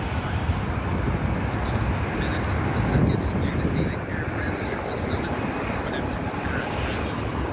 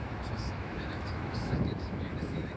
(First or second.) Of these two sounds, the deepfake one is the second